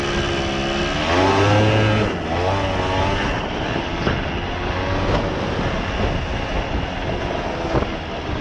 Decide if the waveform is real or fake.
real